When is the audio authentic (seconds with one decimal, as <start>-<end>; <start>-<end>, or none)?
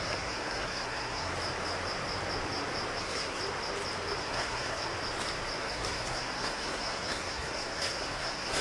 1.3-3.0; 3.4-4.2; 4.9-5.6